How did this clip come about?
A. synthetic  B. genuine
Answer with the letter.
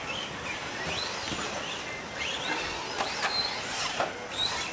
B